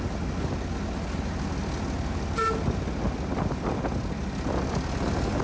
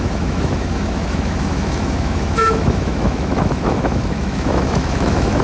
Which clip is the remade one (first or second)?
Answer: second